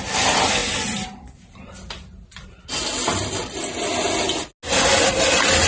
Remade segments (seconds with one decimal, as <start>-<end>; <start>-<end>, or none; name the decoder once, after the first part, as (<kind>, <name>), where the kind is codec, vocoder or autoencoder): none